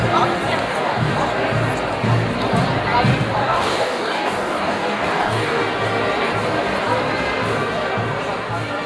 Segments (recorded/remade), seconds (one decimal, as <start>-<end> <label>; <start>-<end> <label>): 0.0-0.6 recorded; 0.6-1.1 remade; 1.1-3.4 recorded; 3.4-5.6 remade; 5.6-8.9 recorded